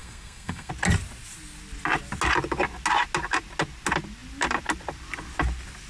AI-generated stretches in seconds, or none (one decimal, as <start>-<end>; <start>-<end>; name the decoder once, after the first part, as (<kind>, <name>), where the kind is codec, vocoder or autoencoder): 0.0-0.7 (codec, SNAC)